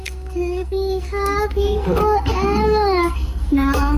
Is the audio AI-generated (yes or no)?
yes